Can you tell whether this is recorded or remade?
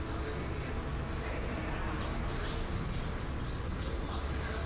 recorded